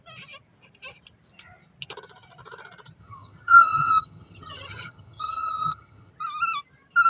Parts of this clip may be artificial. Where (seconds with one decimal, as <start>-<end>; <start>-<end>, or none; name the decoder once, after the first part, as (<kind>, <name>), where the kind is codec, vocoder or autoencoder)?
3.0-6.1 (vocoder, HiFi-GAN)